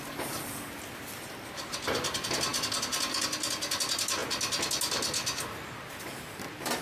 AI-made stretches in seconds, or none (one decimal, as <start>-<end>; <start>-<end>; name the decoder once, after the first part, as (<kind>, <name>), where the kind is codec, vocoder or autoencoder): none